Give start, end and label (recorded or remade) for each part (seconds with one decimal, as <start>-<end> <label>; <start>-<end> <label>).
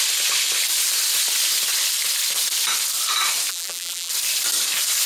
0.0-3.5 recorded; 3.5-4.1 remade; 4.1-5.1 recorded